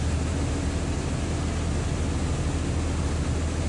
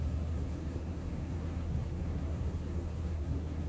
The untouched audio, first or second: first